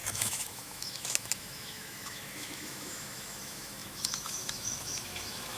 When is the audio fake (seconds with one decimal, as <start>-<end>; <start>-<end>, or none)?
0.0-5.6